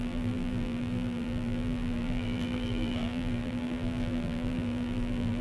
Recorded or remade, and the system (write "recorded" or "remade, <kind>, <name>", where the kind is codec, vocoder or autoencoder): remade, vocoder, BigVGAN v2